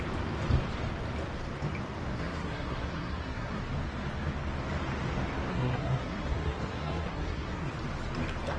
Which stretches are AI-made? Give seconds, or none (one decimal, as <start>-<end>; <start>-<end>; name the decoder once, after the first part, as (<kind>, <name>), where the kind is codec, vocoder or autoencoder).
2.0-3.6 (codec, SNAC); 5.5-7.7